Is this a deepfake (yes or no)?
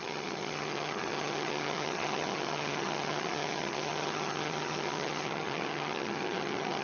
yes